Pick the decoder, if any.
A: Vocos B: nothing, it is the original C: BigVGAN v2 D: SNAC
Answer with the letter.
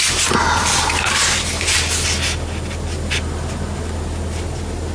B